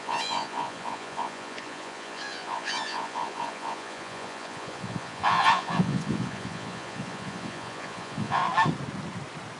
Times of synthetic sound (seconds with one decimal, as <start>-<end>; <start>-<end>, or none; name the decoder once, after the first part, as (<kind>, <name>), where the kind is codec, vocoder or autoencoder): 0.0-8.4 (vocoder, Vocos)